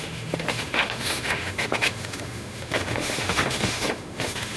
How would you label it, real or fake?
fake